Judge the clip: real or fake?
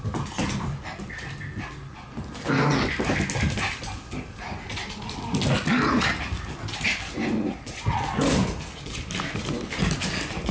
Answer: real